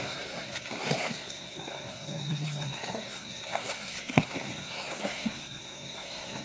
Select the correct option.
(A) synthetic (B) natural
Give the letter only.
A